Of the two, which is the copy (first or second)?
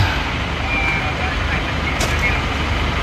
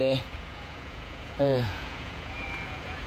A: second